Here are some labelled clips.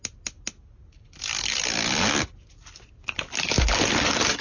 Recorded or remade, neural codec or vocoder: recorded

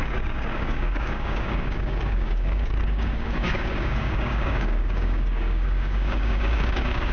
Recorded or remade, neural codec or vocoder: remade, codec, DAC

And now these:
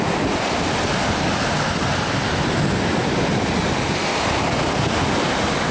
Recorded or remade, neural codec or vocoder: recorded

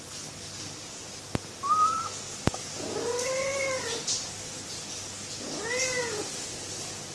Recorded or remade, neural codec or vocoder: recorded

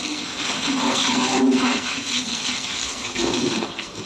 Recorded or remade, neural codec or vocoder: remade, codec, SNAC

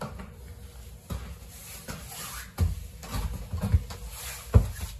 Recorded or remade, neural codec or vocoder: recorded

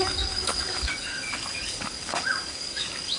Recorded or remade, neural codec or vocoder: remade, codec, DAC